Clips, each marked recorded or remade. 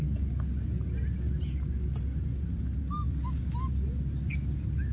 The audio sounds recorded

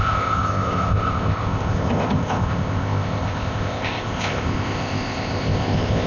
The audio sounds remade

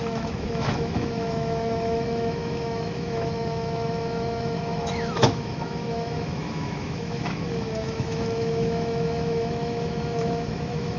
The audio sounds remade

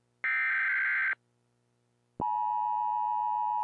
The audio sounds recorded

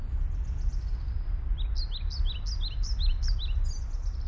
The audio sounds recorded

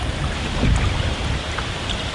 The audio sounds recorded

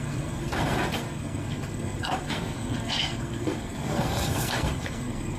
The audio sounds remade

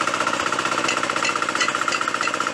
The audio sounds recorded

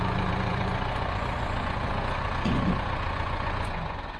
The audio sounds remade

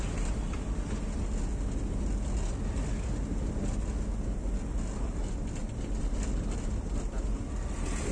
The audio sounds recorded